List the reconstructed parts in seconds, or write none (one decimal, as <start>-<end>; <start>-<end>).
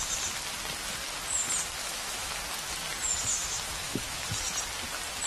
1.8-2.3; 3.2-4.5